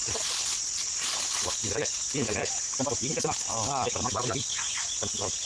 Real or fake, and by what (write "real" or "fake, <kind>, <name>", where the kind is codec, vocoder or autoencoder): real